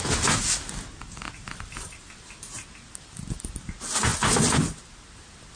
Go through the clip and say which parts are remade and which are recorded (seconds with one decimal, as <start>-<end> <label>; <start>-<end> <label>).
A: 0.0-5.6 recorded